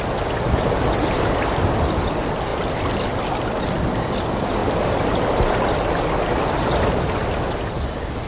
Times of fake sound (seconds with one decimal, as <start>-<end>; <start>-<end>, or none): none